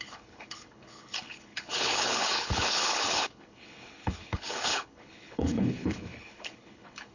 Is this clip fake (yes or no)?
yes